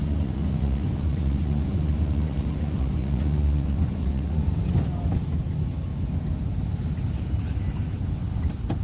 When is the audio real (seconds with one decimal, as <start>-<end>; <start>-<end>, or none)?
4.5-8.8